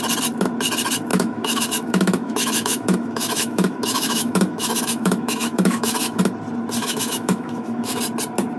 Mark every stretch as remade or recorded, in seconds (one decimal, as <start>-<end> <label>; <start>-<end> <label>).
0.0-1.1 recorded; 1.1-6.2 remade; 6.2-6.8 recorded; 6.8-8.0 remade; 8.0-8.6 recorded